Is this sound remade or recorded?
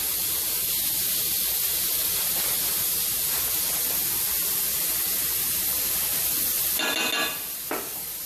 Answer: recorded